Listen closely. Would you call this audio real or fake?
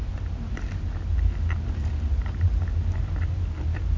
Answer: real